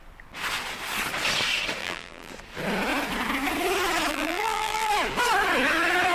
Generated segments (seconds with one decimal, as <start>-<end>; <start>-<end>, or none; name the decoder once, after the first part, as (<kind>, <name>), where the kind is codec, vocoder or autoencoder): 1.8-2.3 (vocoder, BigVGAN v2); 4.1-4.9